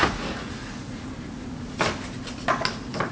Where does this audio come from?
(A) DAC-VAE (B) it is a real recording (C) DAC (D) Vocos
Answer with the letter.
B